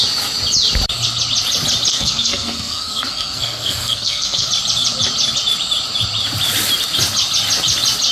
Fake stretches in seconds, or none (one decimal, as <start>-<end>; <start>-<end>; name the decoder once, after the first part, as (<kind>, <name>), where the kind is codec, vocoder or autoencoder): 1.9-4.5 (codec, SNAC)